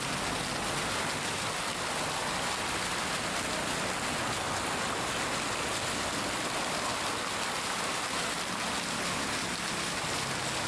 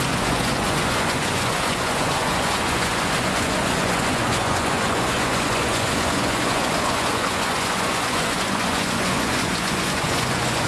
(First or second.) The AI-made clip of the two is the second